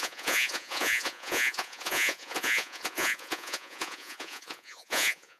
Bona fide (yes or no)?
no